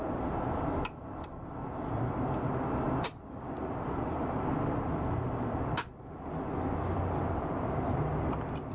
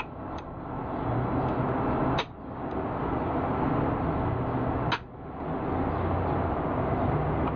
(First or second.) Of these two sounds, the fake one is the first